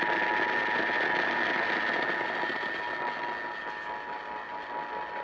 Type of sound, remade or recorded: recorded